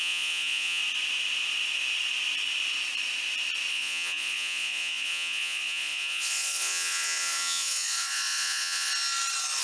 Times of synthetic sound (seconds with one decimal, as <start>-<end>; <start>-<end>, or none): 0.0-0.8; 3.7-8.9